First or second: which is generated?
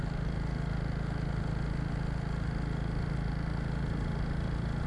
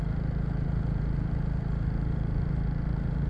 second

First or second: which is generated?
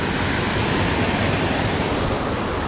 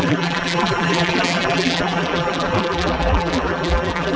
second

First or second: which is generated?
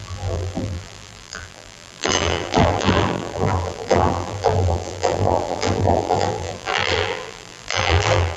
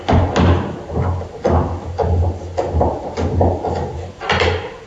first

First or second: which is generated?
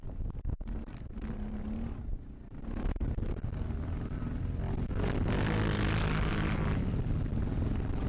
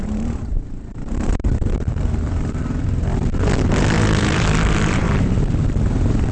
second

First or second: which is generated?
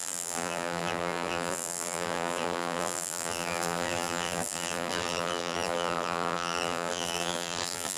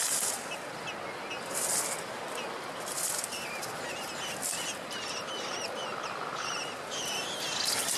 first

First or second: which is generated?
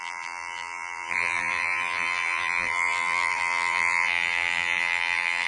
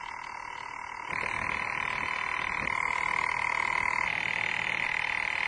first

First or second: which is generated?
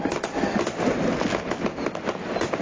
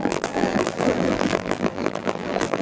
second